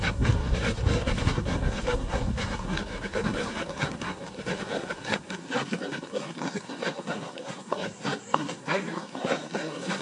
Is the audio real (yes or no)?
no